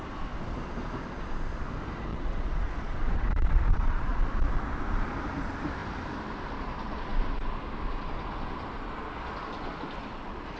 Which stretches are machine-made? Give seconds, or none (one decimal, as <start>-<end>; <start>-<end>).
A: 2.1-4.2